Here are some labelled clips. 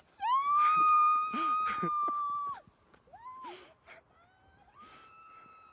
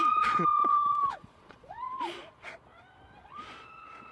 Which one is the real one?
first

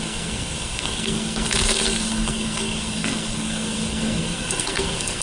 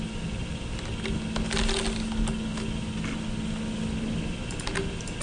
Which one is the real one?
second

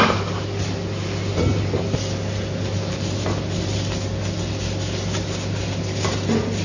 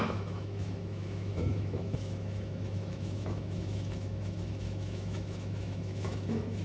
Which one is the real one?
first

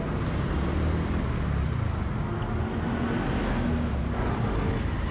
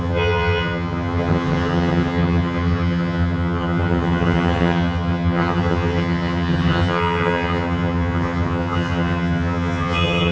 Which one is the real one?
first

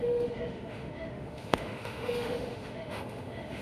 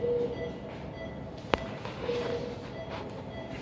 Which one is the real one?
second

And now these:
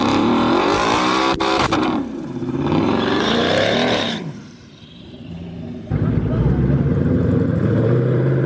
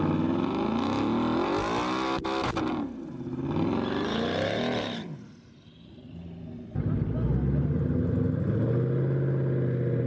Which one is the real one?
second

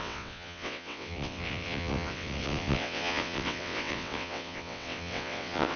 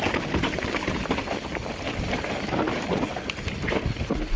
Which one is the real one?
second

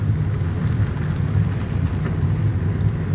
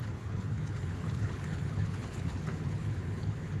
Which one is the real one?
first